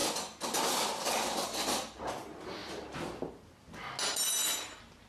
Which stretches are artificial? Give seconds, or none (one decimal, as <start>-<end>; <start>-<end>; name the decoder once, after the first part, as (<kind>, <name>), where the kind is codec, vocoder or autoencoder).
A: none